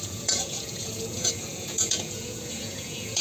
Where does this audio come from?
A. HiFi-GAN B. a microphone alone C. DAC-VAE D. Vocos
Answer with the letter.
D